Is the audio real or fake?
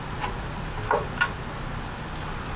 real